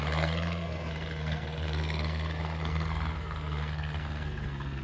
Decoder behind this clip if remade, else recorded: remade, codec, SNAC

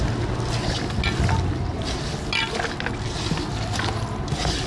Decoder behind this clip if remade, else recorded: recorded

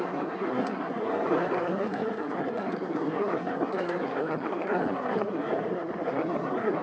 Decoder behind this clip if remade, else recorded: remade, codec, SNAC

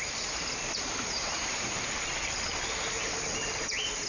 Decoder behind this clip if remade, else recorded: recorded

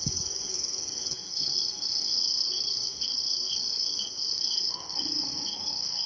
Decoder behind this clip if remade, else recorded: remade, codec, SNAC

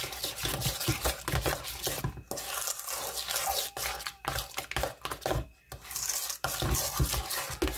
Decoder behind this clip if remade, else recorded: recorded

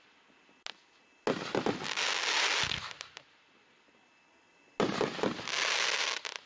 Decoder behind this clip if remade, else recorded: recorded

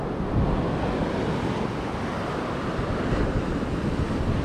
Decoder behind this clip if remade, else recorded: recorded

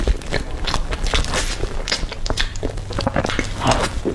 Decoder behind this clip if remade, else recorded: recorded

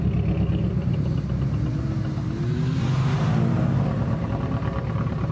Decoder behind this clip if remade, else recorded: recorded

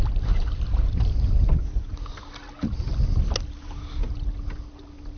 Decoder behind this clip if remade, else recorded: recorded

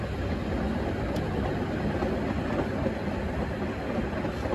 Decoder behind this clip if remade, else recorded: recorded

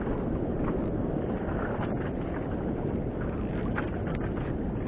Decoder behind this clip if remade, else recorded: recorded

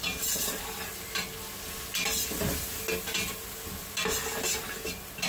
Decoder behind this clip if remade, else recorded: recorded